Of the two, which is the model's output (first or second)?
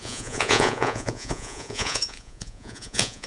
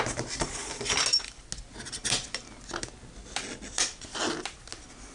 first